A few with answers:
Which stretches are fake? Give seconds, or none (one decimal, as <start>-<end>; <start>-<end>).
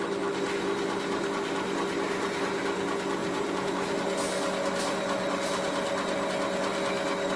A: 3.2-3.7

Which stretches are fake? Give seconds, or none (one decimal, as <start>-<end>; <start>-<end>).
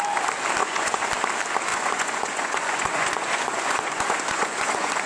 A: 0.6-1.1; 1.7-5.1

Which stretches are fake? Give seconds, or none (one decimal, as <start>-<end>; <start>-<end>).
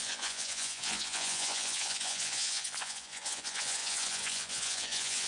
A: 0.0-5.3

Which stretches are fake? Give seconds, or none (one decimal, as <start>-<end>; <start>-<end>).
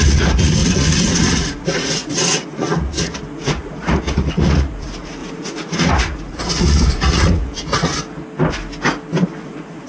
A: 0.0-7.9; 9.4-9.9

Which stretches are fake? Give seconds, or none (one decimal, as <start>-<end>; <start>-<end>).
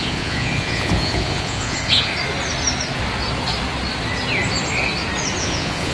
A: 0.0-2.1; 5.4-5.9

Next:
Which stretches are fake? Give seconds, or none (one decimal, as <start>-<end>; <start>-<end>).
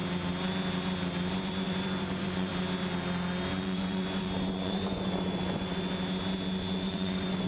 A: 1.3-2.5; 3.5-5.7; 6.9-7.5